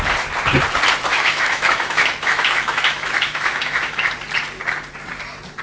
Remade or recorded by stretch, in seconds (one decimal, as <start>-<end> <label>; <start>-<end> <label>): 0.0-1.1 recorded; 1.1-4.1 remade; 4.1-5.6 recorded